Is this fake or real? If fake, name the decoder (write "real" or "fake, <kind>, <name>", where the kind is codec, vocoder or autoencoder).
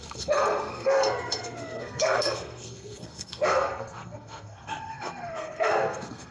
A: fake, codec, SNAC